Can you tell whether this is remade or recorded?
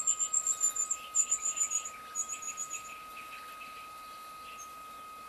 recorded